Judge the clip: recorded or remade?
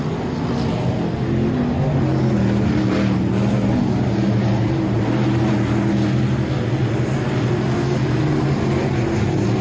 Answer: recorded